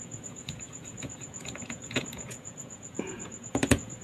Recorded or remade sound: remade